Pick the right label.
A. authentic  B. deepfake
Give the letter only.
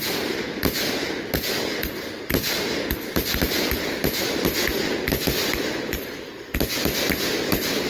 A